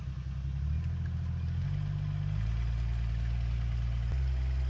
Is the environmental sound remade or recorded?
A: recorded